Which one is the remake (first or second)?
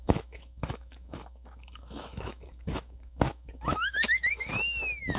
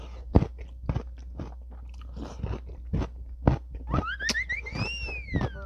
first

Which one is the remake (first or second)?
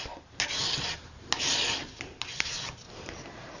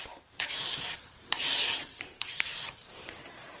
second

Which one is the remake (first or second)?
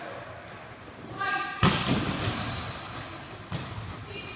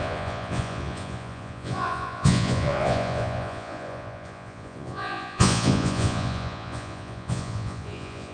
second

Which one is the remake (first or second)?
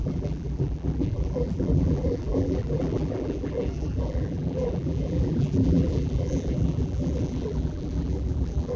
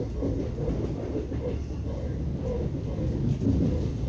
first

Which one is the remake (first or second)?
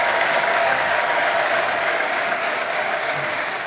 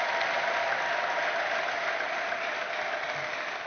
first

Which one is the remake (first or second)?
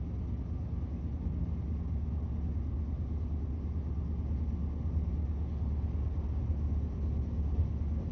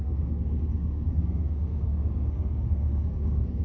second